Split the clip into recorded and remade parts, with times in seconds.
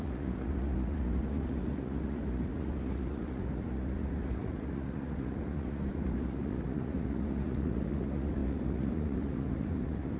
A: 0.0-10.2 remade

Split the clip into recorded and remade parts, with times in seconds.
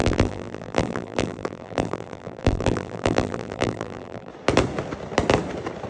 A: 0.0-4.3 remade; 4.3-5.9 recorded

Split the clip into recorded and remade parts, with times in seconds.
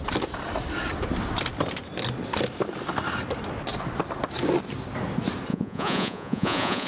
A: 0.0-5.5 recorded; 5.5-6.9 remade